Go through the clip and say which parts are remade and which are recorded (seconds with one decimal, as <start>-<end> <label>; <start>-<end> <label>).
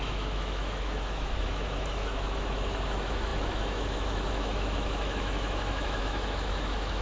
0.0-7.0 remade